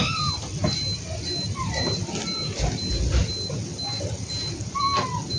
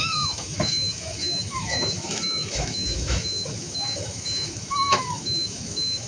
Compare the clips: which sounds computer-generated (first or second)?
second